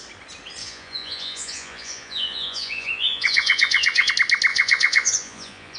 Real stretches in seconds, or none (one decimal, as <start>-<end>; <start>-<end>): 0.0-0.6; 4.1-4.5